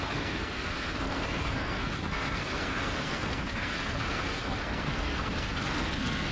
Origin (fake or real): fake